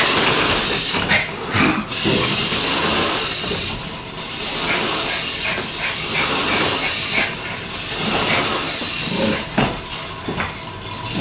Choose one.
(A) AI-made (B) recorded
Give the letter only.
B